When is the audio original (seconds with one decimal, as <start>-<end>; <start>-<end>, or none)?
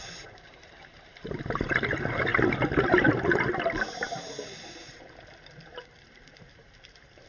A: 2.3-4.8